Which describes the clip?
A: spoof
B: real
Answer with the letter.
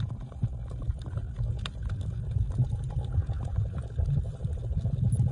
B